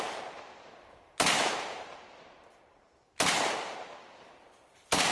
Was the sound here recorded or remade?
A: remade